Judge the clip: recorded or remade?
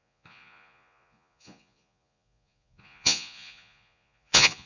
remade